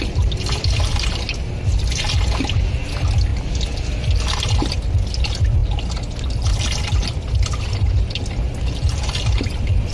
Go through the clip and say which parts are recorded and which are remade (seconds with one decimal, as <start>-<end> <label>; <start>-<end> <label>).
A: 0.0-9.9 recorded